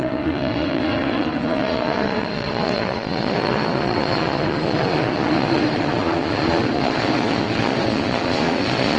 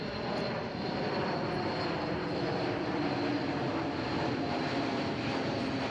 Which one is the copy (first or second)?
first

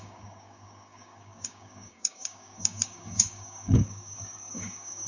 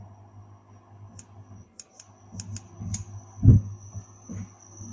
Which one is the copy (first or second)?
first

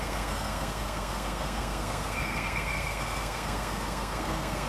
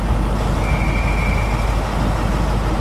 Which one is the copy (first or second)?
first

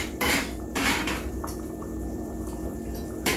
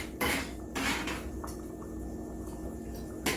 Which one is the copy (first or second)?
first